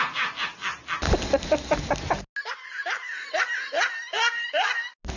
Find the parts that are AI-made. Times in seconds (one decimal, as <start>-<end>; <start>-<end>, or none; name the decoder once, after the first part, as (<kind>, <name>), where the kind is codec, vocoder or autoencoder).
none